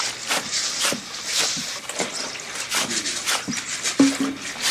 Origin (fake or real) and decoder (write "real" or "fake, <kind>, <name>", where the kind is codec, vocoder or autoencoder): real